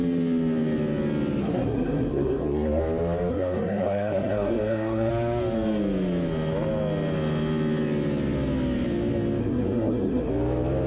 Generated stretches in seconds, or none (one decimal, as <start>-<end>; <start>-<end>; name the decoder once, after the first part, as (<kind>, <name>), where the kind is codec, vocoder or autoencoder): 1.4-2.8 (codec, SNAC); 3.3-5.1; 9.4-10.3